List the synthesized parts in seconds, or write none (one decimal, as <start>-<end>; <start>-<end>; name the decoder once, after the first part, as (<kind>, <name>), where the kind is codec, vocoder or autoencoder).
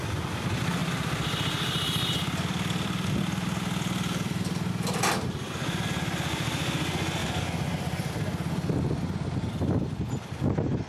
0.8-4.7 (vocoder, BigVGAN v2); 7.2-8.1